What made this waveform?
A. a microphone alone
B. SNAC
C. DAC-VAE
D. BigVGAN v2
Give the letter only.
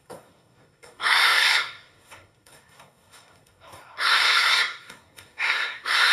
B